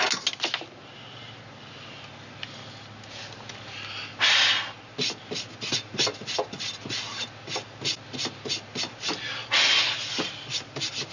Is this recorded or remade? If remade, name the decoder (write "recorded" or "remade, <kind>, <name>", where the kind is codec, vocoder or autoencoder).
recorded